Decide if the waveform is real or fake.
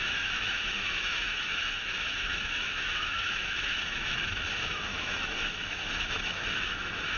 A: fake